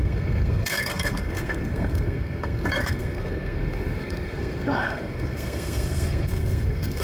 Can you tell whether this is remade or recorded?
remade